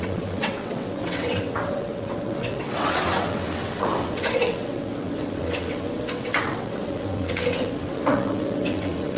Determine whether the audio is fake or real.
fake